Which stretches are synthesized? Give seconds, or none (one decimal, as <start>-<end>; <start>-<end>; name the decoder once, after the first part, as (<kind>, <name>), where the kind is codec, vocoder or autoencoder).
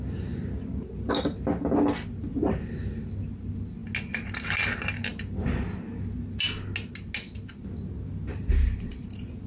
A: none